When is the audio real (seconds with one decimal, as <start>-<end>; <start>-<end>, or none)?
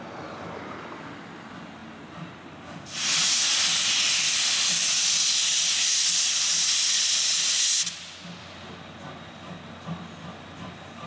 0.0-11.1